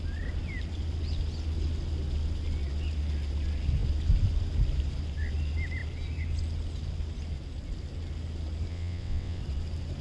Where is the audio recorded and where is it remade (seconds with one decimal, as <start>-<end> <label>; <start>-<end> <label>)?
0.0-8.7 recorded; 8.7-9.4 remade; 9.4-10.0 recorded